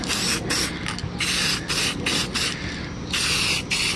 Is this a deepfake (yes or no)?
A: no